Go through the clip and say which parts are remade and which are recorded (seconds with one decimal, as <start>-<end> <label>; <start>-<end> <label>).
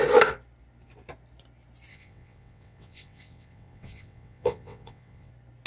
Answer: 0.0-1.9 recorded; 1.9-5.3 remade; 5.3-5.7 recorded